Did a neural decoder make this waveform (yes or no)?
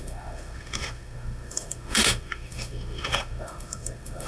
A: yes